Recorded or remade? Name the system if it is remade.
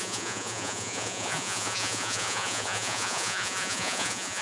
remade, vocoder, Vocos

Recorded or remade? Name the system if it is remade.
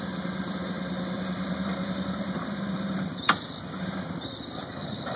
remade, vocoder, BigVGAN v2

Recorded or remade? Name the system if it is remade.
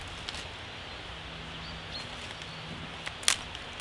recorded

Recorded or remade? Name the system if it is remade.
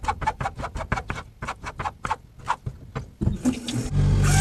recorded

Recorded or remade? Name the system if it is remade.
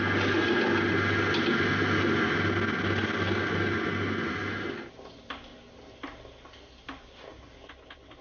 recorded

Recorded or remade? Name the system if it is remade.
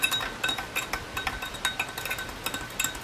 recorded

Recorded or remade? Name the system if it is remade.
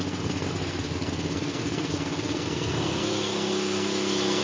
remade, codec, SNAC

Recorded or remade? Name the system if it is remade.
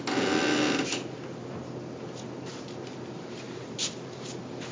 recorded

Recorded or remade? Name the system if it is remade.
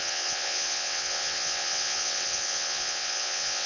remade, vocoder, WaveNeXt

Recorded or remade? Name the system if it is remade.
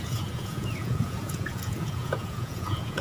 remade, vocoder, Vocos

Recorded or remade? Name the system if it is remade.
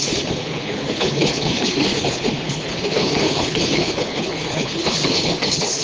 remade, codec, HILCodec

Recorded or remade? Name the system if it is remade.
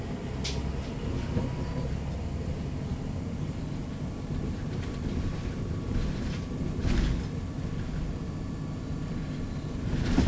recorded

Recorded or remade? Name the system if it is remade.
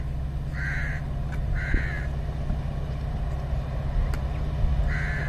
recorded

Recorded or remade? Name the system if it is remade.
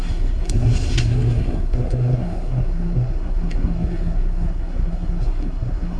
remade, codec, SNAC